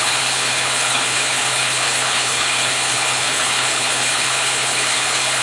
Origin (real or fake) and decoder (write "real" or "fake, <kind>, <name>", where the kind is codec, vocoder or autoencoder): fake, codec, HILCodec